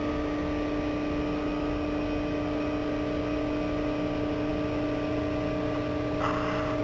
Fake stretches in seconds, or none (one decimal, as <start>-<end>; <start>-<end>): none